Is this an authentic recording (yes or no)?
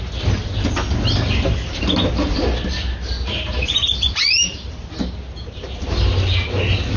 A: yes